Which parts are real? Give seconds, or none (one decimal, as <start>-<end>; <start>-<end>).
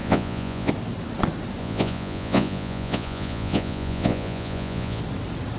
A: 0.7-1.6; 5.0-5.6